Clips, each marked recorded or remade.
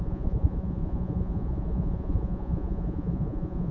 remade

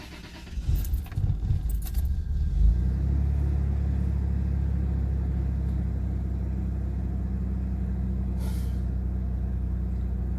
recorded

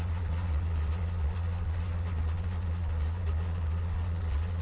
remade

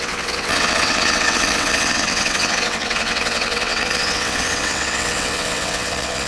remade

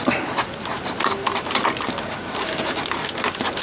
recorded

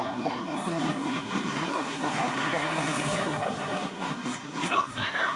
remade